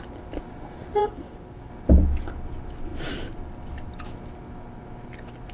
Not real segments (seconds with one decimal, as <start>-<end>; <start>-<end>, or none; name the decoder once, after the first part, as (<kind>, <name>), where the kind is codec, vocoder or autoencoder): 1.0-1.7 (codec, DAC)